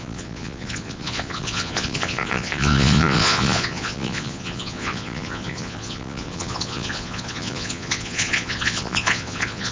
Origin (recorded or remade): remade